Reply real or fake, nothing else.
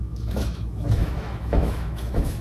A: fake